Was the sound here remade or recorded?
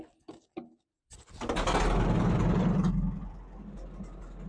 recorded